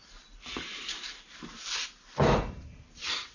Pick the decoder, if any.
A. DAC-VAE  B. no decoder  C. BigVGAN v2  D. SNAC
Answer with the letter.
C